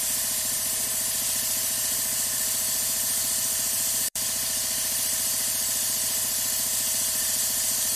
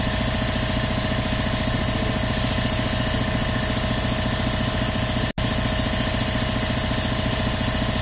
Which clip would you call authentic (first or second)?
second